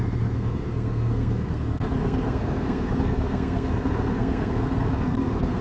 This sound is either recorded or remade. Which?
remade